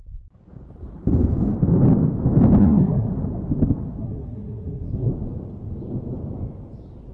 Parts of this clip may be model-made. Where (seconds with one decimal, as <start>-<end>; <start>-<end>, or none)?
2.6-3.1; 4.0-5.1